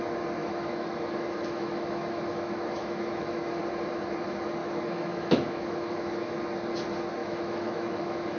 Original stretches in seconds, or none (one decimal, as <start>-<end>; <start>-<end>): 0.0-0.4; 3.6-4.6; 6.4-7.2